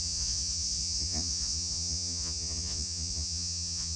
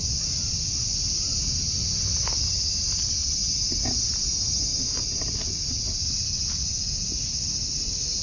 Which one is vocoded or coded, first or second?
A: first